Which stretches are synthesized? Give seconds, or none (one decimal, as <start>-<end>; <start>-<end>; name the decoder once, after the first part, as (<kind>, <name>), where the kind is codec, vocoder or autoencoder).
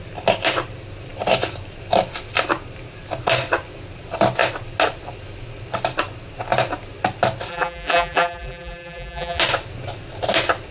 7.5-9.4 (vocoder, BigVGAN v2)